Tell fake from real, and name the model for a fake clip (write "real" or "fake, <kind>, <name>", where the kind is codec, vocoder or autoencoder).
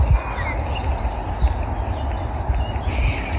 real